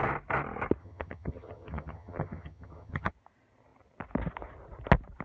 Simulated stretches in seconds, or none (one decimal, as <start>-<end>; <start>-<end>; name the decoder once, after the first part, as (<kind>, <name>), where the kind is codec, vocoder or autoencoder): 0.8-3.1 (vocoder, HiFi-GAN)